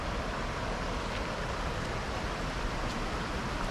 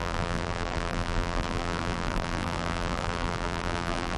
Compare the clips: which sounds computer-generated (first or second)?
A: second